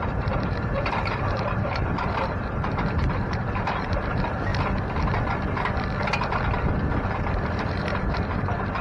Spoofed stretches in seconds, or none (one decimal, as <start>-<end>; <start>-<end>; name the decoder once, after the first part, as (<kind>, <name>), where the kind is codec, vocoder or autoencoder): 0.0-4.5 (vocoder, BigVGAN v2); 7.1-8.8